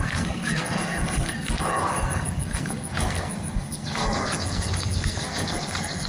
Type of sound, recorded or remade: remade